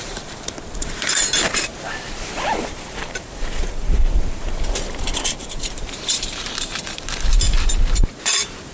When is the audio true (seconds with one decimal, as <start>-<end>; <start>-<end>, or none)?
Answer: 1.7-2.5; 4.4-5.3; 6.4-7.3